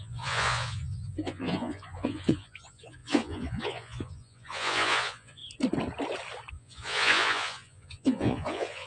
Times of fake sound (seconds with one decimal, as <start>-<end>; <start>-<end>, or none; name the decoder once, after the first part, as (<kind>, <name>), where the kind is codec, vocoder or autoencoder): 0.0-5.4 (vocoder, Vocos); 6.5-8.9